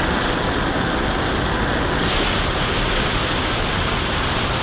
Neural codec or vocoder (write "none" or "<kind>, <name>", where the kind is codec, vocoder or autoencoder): none